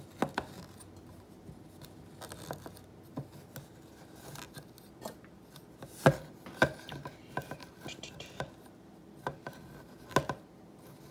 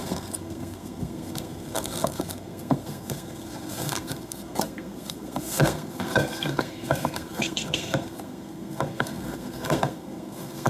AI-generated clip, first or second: second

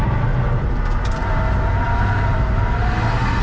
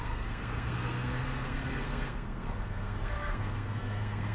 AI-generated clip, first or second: second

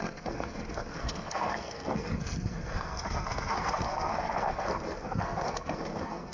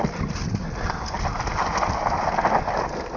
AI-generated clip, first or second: first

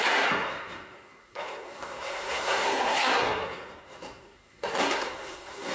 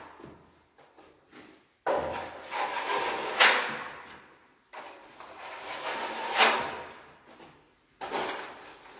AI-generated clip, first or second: first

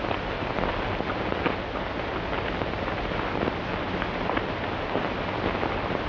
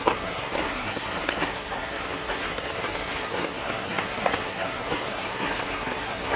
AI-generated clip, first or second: second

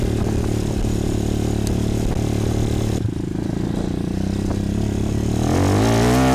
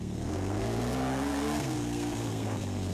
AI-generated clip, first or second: second